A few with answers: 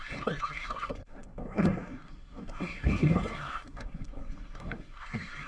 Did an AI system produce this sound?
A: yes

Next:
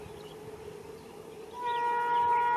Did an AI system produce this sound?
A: no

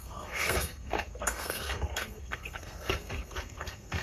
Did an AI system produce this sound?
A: yes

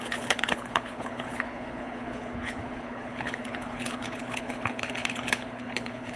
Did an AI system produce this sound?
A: yes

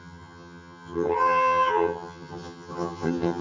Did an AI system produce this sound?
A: yes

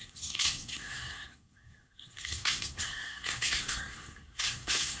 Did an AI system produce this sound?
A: yes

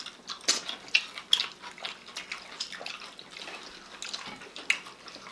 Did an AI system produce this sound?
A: no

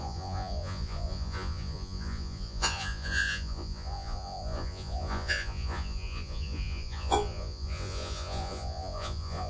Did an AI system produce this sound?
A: yes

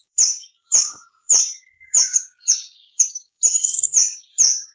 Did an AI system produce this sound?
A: yes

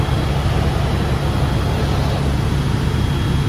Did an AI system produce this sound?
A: no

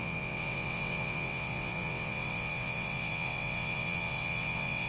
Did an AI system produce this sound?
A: yes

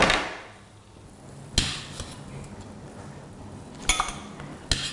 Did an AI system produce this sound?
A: no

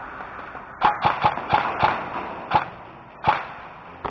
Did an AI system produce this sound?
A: no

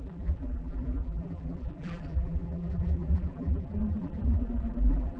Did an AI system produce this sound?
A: yes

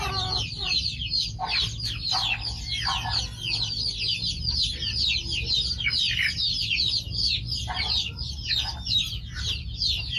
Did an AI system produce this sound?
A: no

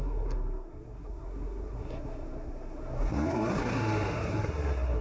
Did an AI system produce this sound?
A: yes